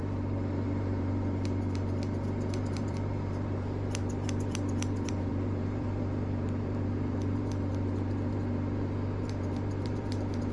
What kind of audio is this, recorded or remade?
remade